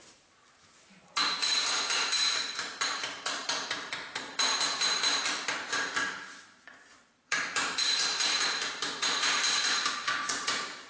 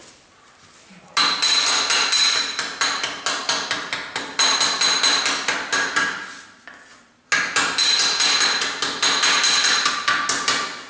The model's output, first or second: first